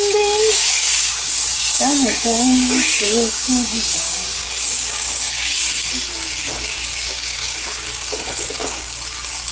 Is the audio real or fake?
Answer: fake